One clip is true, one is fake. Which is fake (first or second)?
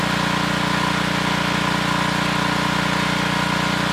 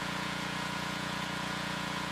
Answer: second